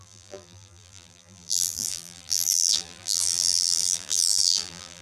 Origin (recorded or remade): remade